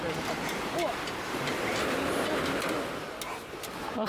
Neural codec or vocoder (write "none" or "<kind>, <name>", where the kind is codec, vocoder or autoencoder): none